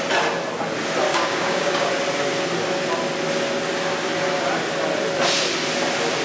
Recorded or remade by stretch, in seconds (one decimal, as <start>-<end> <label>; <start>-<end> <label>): 0.0-1.1 recorded; 1.1-1.9 remade; 1.9-6.2 recorded